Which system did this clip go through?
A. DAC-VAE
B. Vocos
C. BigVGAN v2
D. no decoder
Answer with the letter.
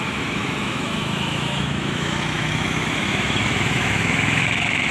A